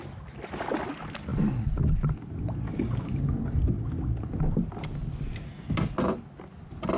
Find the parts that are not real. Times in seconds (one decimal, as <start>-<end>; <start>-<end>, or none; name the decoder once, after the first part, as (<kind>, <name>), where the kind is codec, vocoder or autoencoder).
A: none